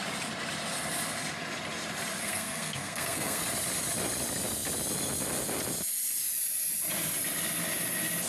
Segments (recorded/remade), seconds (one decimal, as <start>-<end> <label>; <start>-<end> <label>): 0.0-2.2 recorded; 2.2-3.4 remade; 3.4-8.3 recorded